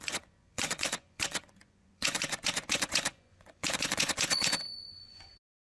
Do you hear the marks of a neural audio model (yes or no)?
yes